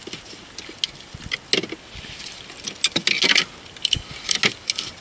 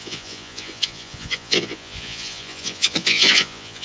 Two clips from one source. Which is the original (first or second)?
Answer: first